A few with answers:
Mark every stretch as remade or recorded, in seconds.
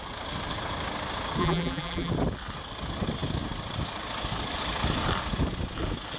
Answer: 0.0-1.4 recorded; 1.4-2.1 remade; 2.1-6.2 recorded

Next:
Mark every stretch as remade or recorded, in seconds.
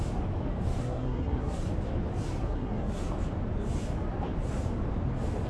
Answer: 0.0-0.8 recorded; 0.8-1.6 remade; 1.6-2.4 recorded; 2.4-3.0 remade; 3.0-5.5 recorded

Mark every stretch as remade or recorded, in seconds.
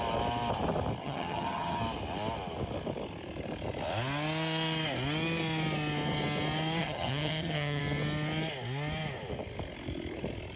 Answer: 0.0-1.0 recorded; 1.0-1.8 remade; 1.8-6.8 recorded; 6.8-7.8 remade; 7.8-10.6 recorded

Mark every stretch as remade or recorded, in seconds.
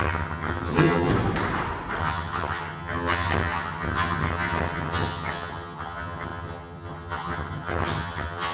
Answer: 0.0-1.1 remade; 1.1-2.0 recorded; 2.0-8.5 remade